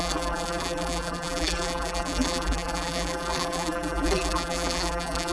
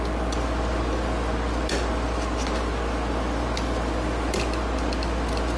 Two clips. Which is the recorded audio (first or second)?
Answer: second